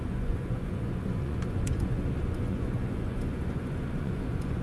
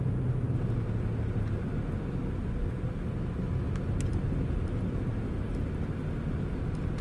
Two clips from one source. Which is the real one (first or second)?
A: second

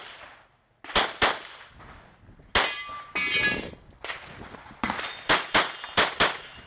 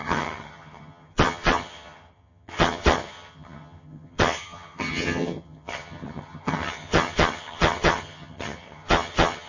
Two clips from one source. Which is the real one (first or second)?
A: first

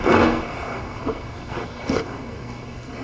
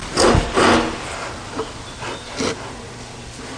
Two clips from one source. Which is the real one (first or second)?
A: second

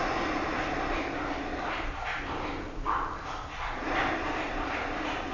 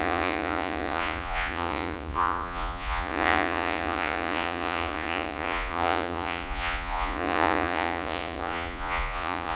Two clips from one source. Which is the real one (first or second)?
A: first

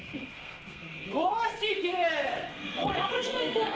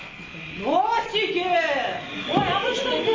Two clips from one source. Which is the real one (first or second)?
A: second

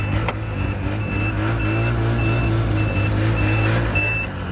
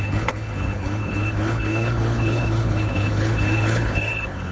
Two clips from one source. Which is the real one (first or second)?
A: first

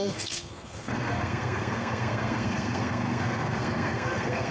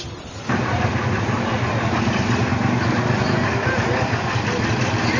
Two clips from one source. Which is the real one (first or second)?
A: second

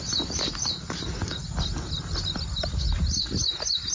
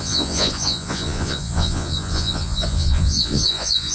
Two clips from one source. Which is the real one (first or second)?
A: first